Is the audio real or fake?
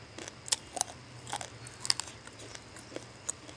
real